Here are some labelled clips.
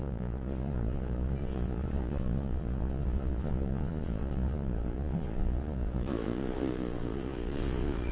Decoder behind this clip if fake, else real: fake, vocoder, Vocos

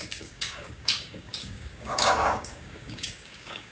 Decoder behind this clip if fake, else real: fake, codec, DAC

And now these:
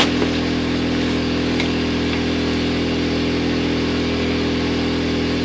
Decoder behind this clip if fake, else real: real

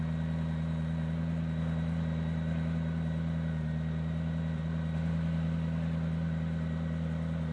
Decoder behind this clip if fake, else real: real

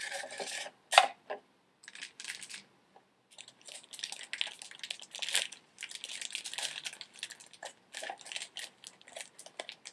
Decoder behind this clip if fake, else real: real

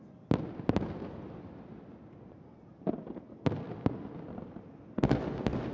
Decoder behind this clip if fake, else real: real